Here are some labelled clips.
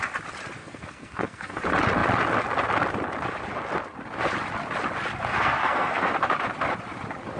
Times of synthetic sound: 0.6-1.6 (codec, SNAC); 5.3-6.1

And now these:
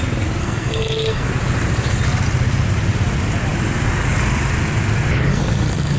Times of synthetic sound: 0.4-1.3 (codec, SNAC); 5.3-6.0

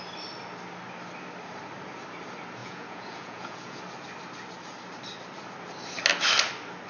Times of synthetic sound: 2.6-3.8 (vocoder, Vocos)